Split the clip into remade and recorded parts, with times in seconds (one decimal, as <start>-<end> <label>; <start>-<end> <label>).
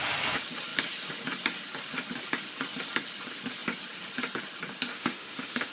0.0-4.9 recorded; 4.9-5.7 remade